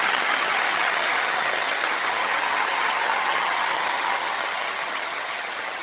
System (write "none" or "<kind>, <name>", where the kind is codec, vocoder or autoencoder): vocoder, HiFi-GAN